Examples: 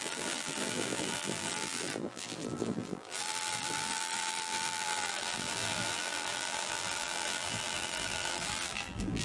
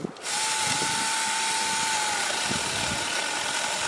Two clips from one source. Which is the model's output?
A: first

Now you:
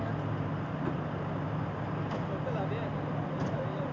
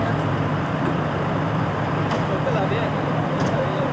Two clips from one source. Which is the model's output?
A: second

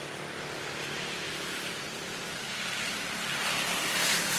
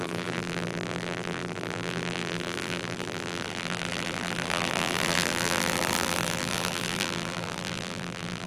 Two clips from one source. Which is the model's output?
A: second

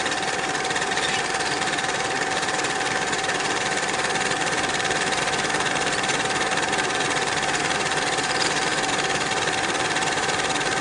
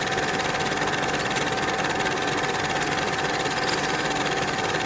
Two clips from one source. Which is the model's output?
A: first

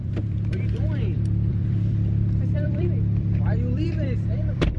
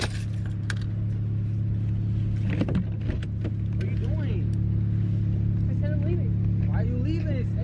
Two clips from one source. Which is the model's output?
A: first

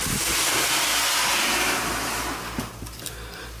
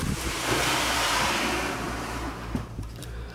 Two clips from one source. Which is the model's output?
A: second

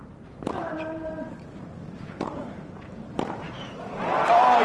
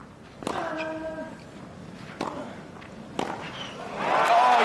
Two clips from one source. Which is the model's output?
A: first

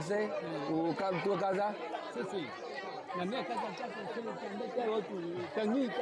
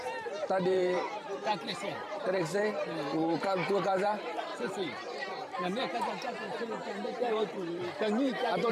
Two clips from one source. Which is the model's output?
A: second